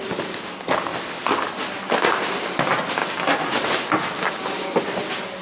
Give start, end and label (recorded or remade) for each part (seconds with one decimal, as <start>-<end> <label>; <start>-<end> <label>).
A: 0.0-5.4 recorded

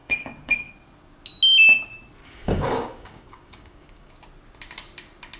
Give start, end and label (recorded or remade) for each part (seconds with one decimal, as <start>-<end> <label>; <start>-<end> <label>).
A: 0.0-0.7 remade; 0.7-2.2 recorded; 2.2-4.1 remade; 4.1-5.4 recorded

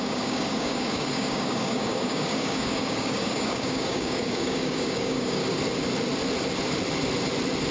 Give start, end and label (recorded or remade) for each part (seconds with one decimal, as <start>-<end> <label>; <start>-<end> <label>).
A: 0.0-5.4 remade; 5.4-7.7 recorded

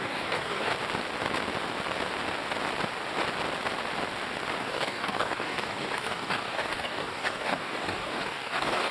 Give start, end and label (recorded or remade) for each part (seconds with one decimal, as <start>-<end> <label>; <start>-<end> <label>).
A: 0.0-0.7 remade; 0.7-4.6 recorded; 4.6-8.9 remade

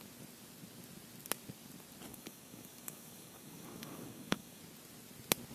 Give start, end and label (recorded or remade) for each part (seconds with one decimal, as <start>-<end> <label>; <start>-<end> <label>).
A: 0.0-2.1 recorded; 2.1-4.6 remade; 4.6-5.5 recorded

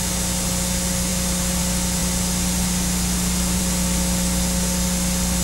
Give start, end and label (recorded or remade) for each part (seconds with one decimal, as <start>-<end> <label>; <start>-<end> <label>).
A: 0.0-5.4 recorded

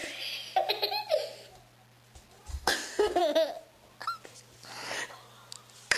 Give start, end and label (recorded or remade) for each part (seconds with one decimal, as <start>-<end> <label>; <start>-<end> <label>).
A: 0.0-2.5 recorded; 2.5-3.2 remade; 3.2-6.0 recorded

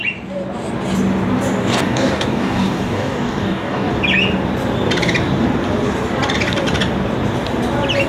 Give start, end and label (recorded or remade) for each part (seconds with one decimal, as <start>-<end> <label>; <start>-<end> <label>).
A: 0.0-1.6 recorded; 1.6-3.9 remade; 3.9-8.1 recorded